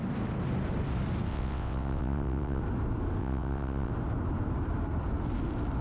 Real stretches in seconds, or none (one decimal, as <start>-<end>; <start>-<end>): 0.0-1.3; 2.6-3.2; 3.9-5.8